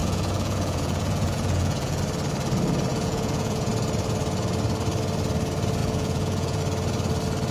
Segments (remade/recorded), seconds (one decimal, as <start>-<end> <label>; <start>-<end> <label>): 0.0-2.0 remade; 2.0-2.9 recorded; 2.9-3.7 remade; 3.7-5.8 recorded; 5.8-6.6 remade; 6.6-7.5 recorded